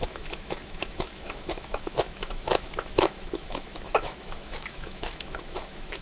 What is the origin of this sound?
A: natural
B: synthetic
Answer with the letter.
B